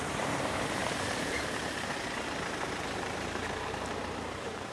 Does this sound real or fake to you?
fake